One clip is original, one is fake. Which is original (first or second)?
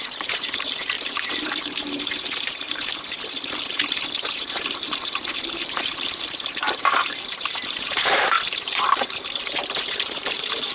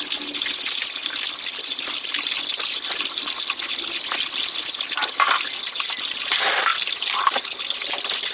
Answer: second